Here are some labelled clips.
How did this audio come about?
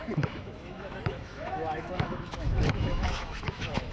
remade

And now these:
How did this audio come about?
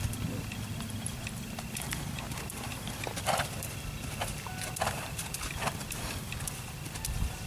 recorded